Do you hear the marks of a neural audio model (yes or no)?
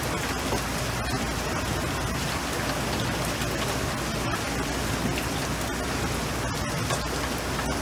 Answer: no